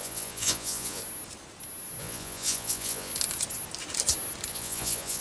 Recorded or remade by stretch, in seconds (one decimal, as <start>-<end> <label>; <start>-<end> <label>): 0.0-1.0 remade; 1.0-2.0 recorded; 2.0-3.1 remade; 3.1-4.5 recorded; 4.5-5.2 remade